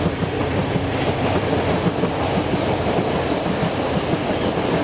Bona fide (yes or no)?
yes